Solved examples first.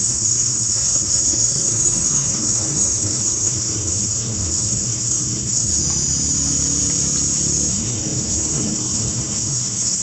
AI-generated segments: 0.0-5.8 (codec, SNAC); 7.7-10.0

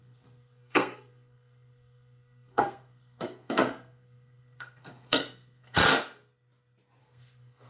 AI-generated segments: 0.0-5.8 (codec, SNAC); 7.0-7.7

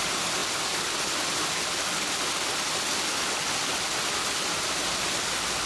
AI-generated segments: none

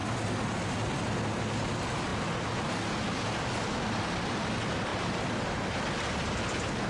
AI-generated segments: none

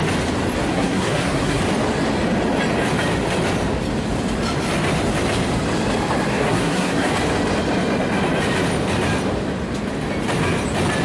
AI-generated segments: 0.7-1.6 (codec, SNAC); 6.3-7.1